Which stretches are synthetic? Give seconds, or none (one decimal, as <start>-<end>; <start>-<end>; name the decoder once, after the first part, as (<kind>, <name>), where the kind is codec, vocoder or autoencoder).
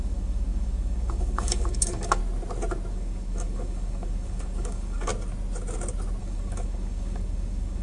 0.0-2.2 (codec, DAC); 2.9-5.1; 6.2-7.8